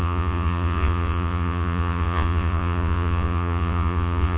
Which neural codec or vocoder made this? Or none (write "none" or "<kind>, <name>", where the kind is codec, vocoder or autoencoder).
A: vocoder, Vocos